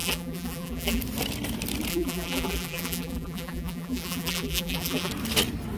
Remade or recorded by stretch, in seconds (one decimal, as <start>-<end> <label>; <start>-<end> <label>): 0.0-1.0 remade; 1.0-1.9 recorded; 1.9-5.1 remade; 5.1-5.8 recorded